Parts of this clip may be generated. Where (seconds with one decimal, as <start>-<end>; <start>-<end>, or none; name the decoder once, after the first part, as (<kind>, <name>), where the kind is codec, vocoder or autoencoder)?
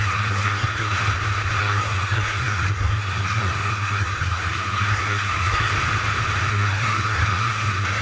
0.0-1.0 (codec, SNAC); 1.6-5.7; 6.5-8.0